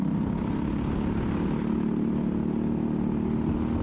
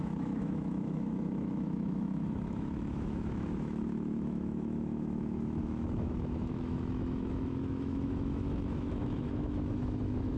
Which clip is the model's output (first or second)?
second